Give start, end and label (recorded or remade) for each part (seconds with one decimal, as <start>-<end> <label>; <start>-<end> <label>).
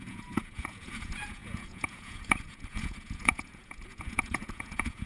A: 0.0-5.1 remade